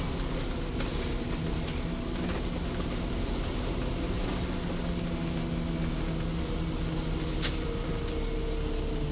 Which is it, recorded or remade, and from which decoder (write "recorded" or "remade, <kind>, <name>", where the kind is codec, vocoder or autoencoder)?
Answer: recorded